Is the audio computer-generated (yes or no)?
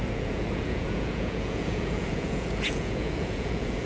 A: yes